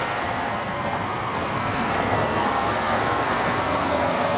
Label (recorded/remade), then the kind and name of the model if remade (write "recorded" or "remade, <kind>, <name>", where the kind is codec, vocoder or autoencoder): remade, codec, SNAC